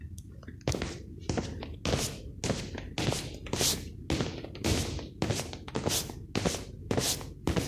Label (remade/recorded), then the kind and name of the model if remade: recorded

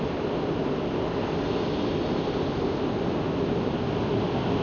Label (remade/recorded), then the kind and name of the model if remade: recorded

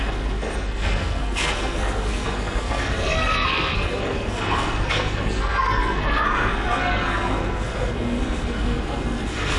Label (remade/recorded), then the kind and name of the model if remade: remade, codec, SNAC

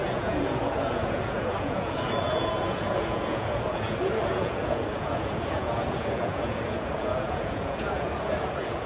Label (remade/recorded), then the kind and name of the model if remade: remade, vocoder, Vocos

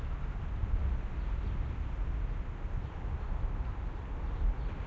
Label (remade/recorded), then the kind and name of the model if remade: recorded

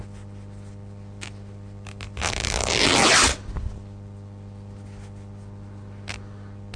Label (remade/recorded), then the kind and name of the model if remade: recorded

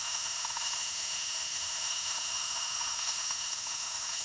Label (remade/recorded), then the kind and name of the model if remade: remade, autoencoder, DAC-VAE